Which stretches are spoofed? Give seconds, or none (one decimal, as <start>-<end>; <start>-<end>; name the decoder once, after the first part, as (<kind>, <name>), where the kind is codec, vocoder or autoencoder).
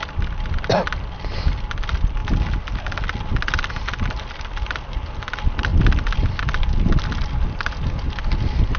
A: none